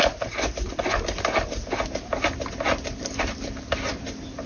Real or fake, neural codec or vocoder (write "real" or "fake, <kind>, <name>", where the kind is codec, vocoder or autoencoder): real